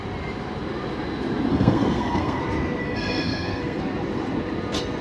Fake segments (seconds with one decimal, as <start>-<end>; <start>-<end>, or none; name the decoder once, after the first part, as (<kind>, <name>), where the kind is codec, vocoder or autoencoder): 1.5-2.4 (codec, SNAC); 2.8-3.8